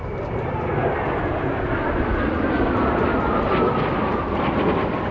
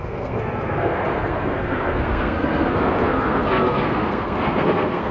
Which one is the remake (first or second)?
second